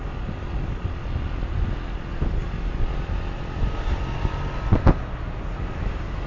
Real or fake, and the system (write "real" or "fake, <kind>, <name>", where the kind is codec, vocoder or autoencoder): real